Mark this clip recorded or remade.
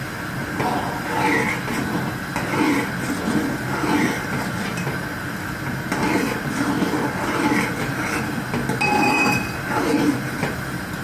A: recorded